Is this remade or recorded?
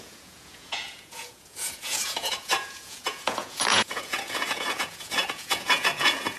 remade